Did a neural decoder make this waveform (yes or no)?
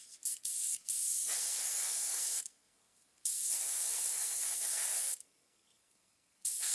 yes